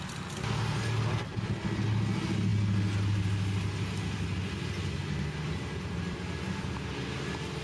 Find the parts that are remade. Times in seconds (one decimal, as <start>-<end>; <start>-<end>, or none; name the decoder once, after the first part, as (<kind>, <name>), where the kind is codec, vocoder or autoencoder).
none